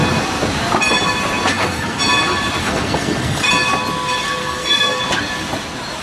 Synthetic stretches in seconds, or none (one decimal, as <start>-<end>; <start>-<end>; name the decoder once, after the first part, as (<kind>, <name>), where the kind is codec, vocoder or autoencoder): 1.5-2.0 (codec, SNAC); 2.6-3.5; 4.4-5.0